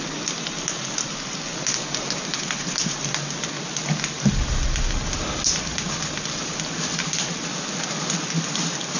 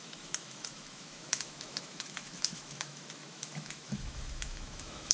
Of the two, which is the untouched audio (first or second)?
first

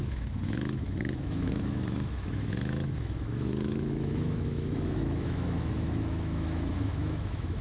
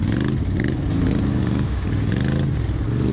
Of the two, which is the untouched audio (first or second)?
second